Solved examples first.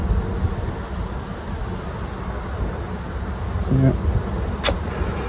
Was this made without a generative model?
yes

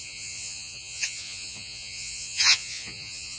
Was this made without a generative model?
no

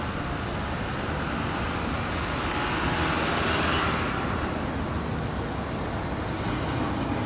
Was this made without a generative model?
yes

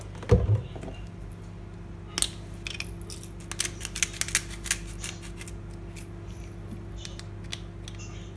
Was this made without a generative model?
yes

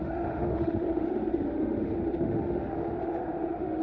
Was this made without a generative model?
no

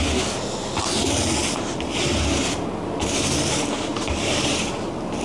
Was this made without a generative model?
yes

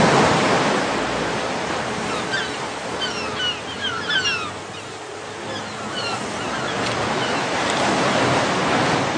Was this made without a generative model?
yes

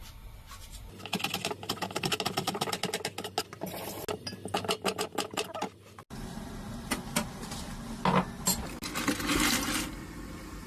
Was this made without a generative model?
yes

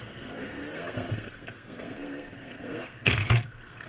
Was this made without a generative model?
no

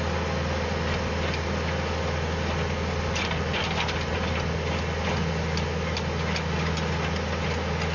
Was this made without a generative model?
yes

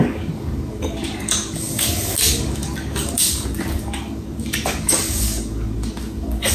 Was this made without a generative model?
no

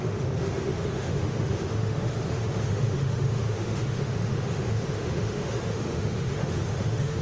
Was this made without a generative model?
no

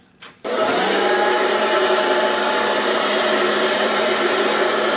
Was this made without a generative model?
no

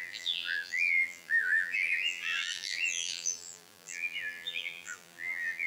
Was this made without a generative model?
no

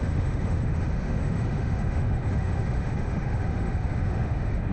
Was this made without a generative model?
no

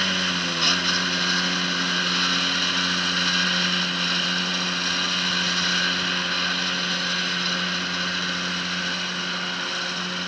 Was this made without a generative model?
yes